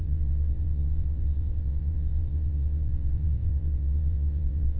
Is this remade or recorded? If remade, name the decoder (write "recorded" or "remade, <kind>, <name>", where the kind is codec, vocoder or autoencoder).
remade, vocoder, WaveNeXt